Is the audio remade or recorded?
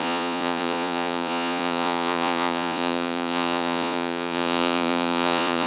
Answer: remade